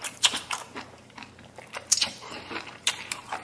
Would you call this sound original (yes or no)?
no